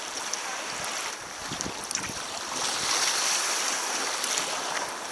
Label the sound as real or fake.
real